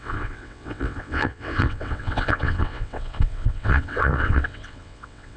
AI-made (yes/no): yes